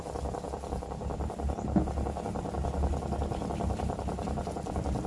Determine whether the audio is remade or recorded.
recorded